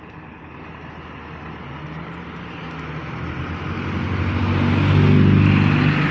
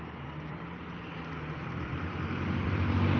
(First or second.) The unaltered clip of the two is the first